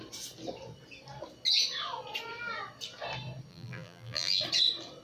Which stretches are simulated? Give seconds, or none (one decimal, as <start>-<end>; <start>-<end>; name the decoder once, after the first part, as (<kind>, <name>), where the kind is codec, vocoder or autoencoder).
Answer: 3.5-4.4 (vocoder, BigVGAN v2)